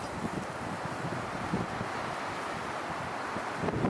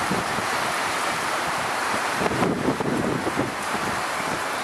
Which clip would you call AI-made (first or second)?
second